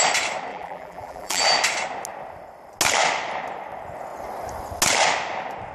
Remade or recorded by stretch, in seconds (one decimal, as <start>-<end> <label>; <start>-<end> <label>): 0.0-0.5 recorded; 0.5-1.4 remade; 1.4-5.7 recorded